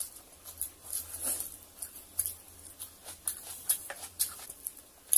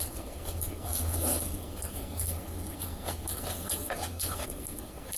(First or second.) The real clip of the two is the first